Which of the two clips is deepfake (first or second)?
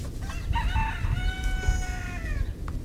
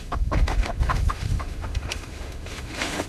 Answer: second